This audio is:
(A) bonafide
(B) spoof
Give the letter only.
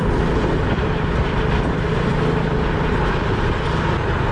A